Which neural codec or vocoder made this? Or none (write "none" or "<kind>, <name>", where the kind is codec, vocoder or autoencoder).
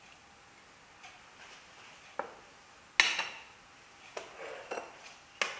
none